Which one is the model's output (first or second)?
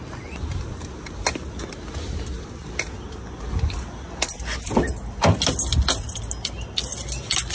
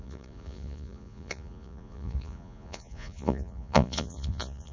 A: second